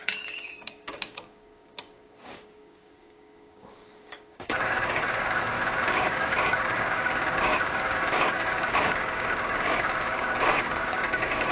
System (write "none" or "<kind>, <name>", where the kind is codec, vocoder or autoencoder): codec, DAC